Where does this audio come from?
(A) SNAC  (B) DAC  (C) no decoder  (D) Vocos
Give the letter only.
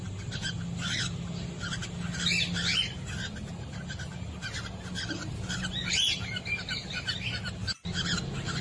C